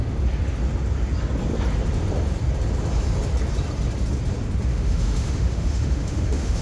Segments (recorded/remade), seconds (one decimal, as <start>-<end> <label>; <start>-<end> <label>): 0.0-4.7 recorded; 4.7-6.6 remade